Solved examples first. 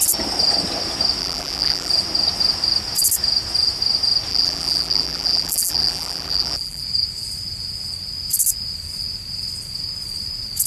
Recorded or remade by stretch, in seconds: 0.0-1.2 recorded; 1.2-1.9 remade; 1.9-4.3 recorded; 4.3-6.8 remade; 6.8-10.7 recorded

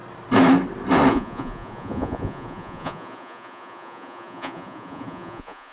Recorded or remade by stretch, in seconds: 0.0-1.1 recorded; 1.1-5.7 remade